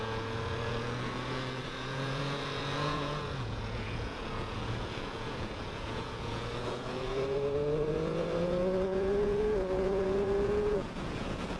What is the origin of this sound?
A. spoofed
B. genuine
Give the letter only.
A